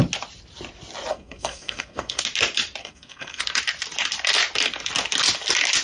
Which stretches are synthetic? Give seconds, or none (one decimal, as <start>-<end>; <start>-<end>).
1.1-2.2; 2.8-3.4

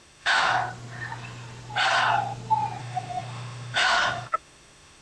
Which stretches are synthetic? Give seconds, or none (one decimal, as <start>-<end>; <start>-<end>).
0.0-0.5; 2.8-5.0

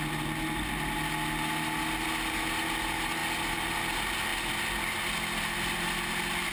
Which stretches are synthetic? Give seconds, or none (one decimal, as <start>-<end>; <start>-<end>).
none

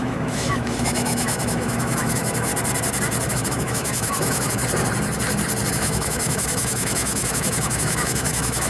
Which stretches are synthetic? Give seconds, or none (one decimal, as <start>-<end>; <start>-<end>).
0.0-2.5; 3.3-4.6; 5.7-8.7

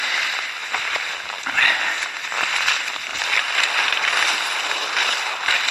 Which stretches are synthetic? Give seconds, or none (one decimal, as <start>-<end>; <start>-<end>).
0.0-0.6; 2.0-3.1; 3.8-5.7

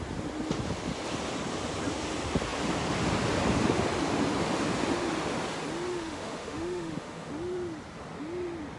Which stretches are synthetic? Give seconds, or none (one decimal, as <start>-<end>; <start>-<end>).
5.9-7.3

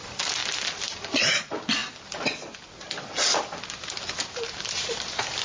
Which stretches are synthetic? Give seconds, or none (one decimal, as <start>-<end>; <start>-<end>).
none

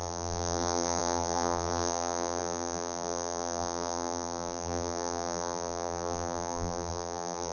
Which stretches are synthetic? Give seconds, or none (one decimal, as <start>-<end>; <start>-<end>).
0.0-7.5